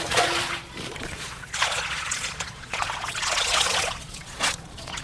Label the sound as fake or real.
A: fake